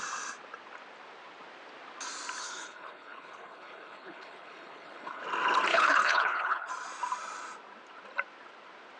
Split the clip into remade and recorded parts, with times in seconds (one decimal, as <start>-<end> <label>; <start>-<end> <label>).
0.0-2.4 recorded; 2.4-5.2 remade; 5.2-5.7 recorded; 5.7-6.7 remade; 6.7-9.0 recorded